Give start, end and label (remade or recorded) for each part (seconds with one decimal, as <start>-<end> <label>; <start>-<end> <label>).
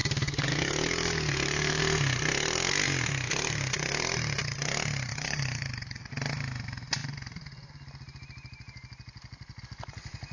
0.0-1.8 remade; 1.8-5.1 recorded; 5.1-6.1 remade; 6.1-10.3 recorded